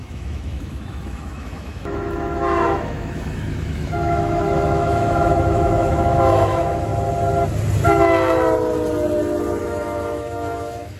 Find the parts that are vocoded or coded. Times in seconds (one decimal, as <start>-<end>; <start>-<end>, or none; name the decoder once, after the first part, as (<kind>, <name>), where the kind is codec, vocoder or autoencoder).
0.0-6.9 (autoencoder, DAC-VAE); 9.6-11.0